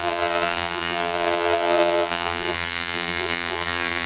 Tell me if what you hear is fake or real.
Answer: fake